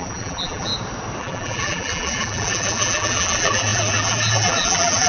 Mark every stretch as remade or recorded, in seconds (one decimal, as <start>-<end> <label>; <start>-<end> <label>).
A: 0.0-0.7 remade; 0.7-1.2 recorded; 1.2-5.1 remade